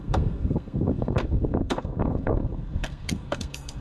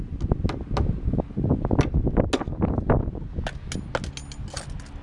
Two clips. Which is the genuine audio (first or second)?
second